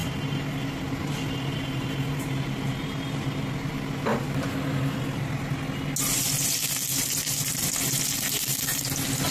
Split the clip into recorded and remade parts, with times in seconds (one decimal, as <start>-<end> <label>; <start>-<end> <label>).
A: 0.0-9.3 recorded